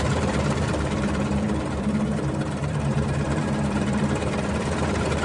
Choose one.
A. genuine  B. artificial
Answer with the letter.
B